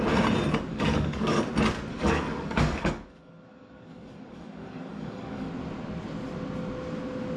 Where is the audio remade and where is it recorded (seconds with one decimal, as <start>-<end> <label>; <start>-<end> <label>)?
0.0-0.7 recorded; 0.7-1.4 remade; 1.4-1.9 recorded; 1.9-5.5 remade; 5.5-7.4 recorded

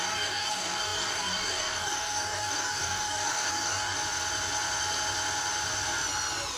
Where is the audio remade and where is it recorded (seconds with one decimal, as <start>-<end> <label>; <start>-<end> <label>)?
0.0-4.0 remade; 4.0-6.6 recorded

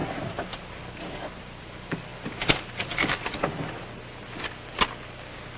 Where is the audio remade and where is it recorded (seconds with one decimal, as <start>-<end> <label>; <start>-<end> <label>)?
0.0-5.6 recorded

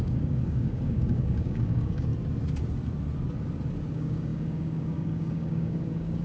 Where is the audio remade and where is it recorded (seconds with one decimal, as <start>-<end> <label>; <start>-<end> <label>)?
0.0-2.1 remade; 2.1-3.9 recorded; 3.9-6.2 remade

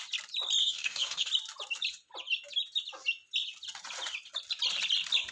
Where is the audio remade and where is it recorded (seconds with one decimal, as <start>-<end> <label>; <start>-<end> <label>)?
0.0-0.6 recorded; 0.6-1.3 remade; 1.3-5.3 recorded

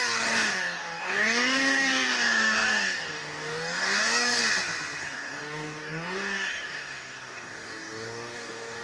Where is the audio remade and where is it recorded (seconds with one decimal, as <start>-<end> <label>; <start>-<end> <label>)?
0.0-4.4 remade; 4.4-5.0 recorded; 5.0-8.8 remade